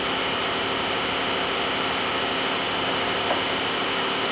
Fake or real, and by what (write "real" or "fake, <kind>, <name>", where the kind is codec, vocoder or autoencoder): real